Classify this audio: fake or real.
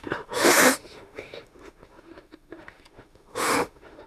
fake